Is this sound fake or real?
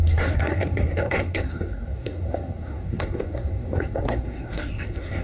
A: fake